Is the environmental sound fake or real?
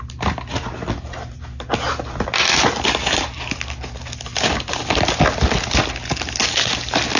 real